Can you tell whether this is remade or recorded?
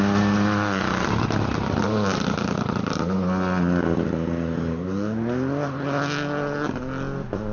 recorded